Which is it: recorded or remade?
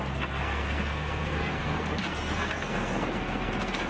remade